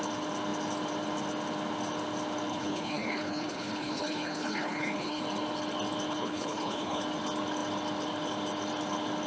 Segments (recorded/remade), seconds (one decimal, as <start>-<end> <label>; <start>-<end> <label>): 0.0-2.5 recorded; 2.5-5.2 remade; 5.2-6.1 recorded; 6.1-7.0 remade; 7.0-9.3 recorded

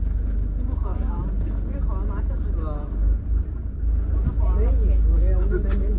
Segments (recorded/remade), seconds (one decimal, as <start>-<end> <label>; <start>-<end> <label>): 0.0-6.0 recorded